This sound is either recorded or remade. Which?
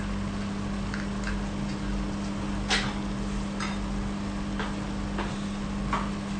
recorded